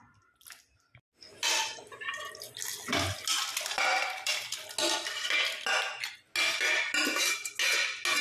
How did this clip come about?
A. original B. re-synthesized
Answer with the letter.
A